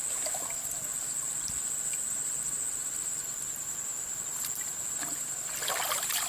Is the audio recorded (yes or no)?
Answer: yes